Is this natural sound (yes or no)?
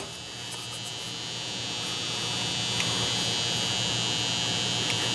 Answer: yes